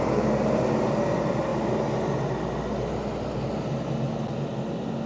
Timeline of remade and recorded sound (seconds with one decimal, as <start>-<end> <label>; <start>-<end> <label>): 0.0-5.1 recorded